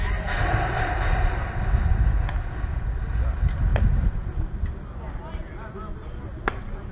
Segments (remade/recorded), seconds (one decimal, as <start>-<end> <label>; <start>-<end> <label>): 0.0-6.9 recorded